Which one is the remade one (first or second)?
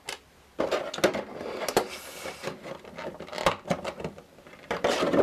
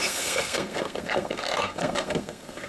second